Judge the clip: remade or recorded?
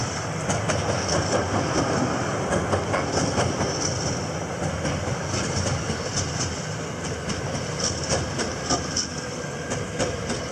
recorded